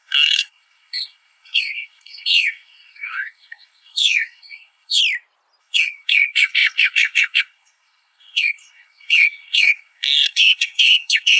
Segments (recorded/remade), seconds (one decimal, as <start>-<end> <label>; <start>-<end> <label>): 0.0-5.0 remade; 5.0-5.6 recorded; 5.6-11.4 remade